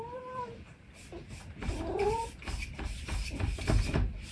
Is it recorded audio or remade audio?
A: remade